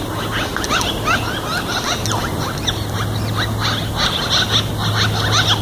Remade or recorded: recorded